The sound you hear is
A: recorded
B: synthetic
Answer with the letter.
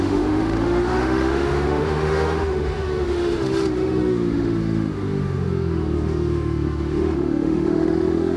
B